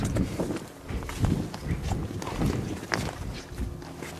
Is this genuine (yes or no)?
yes